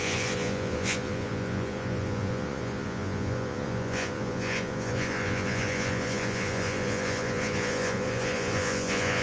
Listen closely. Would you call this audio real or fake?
fake